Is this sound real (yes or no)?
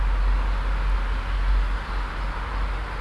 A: yes